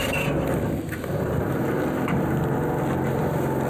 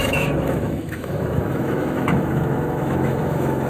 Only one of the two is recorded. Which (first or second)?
first